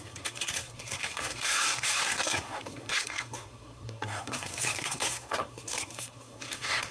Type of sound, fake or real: fake